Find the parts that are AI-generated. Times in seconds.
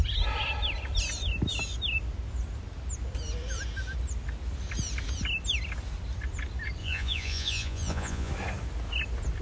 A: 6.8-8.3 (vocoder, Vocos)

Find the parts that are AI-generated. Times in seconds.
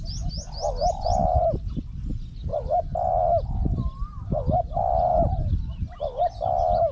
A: 0.8-1.4 (vocoder, BigVGAN v2); 2.5-3.1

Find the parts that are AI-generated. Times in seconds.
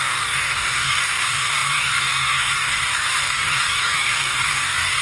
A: 0.0-5.0 (codec, DAC)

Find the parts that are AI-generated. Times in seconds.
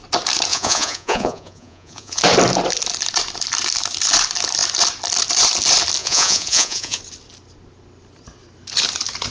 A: 0.5-2.2 (vocoder, Vocos); 6.0-7.0